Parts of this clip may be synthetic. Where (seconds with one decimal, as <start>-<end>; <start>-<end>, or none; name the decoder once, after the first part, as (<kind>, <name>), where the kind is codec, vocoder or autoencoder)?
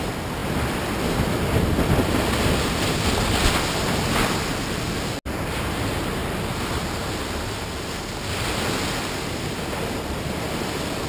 none